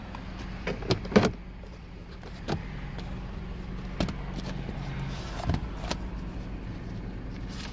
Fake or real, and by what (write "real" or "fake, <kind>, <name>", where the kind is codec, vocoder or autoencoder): fake, vocoder, BigVGAN v2